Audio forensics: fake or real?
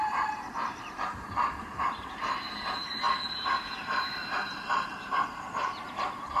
fake